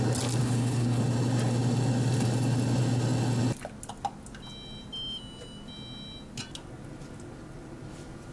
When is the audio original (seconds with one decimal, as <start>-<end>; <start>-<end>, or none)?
0.0-0.4; 1.0-8.3